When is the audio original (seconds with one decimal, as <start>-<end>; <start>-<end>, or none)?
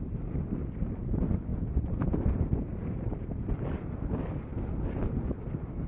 0.0-1.5; 3.3-5.9